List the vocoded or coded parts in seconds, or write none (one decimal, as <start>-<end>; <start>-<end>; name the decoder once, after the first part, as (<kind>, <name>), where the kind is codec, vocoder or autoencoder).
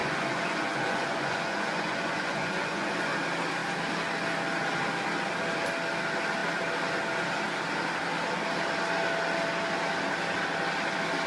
0.0-3.1 (vocoder, Vocos)